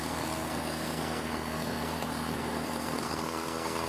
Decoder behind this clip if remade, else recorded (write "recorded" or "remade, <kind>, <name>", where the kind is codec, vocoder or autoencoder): remade, codec, SNAC